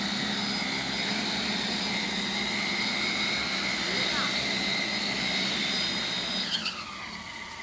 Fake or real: real